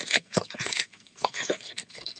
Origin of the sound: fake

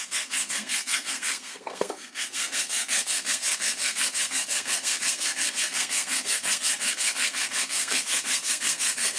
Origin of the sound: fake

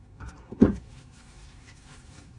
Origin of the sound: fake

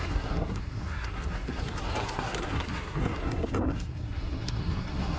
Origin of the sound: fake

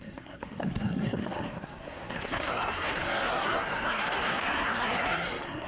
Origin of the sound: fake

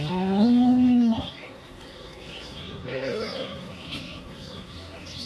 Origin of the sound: fake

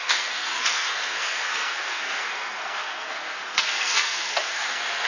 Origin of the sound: fake